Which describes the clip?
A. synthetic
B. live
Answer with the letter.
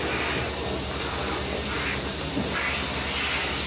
B